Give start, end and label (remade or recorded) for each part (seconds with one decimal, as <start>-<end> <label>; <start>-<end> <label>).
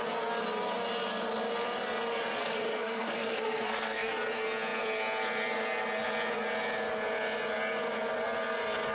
0.0-2.4 recorded; 2.4-4.1 remade; 4.1-8.9 recorded